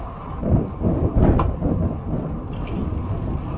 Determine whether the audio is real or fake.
real